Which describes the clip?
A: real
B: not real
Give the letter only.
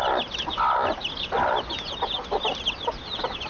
A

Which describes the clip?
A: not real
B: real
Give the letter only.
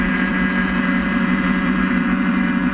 A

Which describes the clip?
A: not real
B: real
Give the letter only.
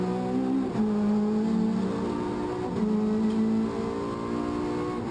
B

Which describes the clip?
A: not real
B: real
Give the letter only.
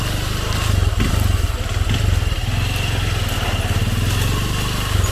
B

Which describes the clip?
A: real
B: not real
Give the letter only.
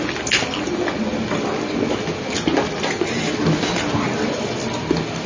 A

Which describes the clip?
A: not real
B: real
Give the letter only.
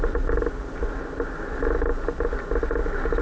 B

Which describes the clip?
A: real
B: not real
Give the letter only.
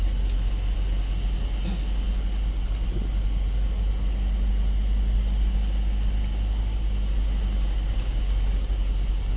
A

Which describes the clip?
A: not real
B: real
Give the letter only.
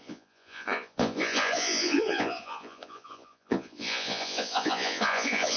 A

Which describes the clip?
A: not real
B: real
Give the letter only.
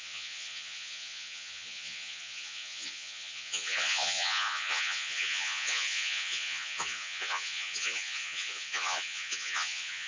A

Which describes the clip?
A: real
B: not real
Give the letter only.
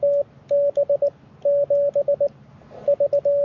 A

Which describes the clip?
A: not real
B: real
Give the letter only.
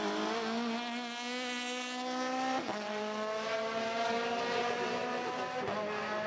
B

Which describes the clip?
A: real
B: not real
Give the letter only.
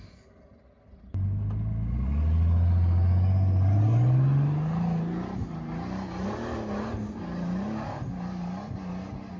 A